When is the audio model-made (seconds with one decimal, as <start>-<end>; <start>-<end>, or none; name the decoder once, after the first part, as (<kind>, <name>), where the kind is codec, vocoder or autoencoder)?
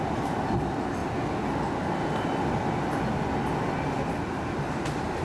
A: none